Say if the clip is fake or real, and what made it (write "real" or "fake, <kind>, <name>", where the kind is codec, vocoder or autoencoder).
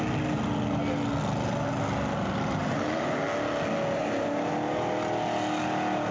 real